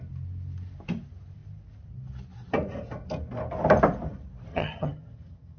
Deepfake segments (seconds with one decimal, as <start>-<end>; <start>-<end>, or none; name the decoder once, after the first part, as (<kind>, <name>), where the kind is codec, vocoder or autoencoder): 4.5-5.6 (vocoder, HiFi-GAN)